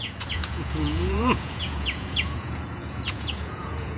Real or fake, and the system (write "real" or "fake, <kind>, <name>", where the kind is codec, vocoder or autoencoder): fake, vocoder, Vocos